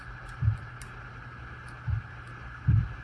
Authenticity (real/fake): real